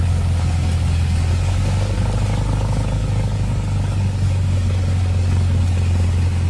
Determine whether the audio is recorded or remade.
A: remade